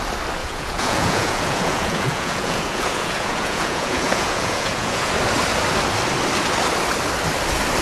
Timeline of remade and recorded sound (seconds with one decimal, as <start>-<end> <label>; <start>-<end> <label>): 0.0-0.4 recorded; 0.4-5.1 remade; 5.1-7.8 recorded